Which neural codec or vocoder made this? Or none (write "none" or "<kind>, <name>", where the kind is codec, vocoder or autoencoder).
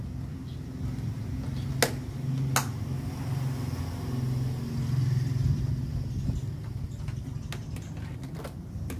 none